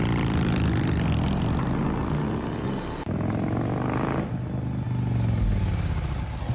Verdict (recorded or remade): recorded